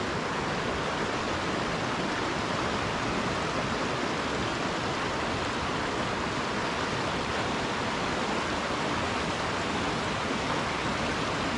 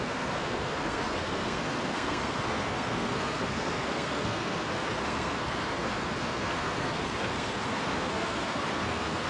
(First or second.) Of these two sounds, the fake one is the second